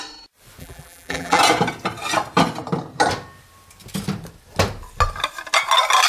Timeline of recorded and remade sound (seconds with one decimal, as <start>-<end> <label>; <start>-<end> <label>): 0.0-0.6 recorded; 0.6-1.4 remade; 1.4-6.1 recorded

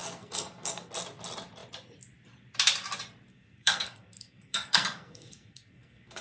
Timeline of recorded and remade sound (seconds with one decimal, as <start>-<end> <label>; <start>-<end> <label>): 0.0-0.9 remade; 0.9-3.3 recorded; 3.3-6.2 remade

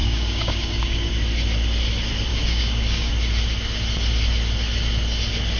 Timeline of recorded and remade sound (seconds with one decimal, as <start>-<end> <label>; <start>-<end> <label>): 0.0-1.1 remade; 1.1-2.3 recorded; 2.3-3.1 remade; 3.1-5.6 recorded

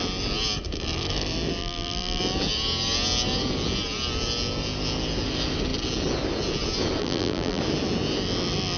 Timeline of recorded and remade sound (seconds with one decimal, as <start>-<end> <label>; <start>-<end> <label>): 0.0-1.6 recorded; 1.6-2.2 remade; 2.2-7.0 recorded; 7.0-7.6 remade; 7.6-8.8 recorded

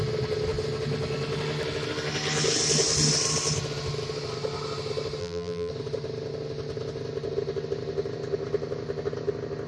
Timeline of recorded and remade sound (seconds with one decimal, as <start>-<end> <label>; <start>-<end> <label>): 0.0-5.2 recorded; 5.2-5.7 remade; 5.7-9.7 recorded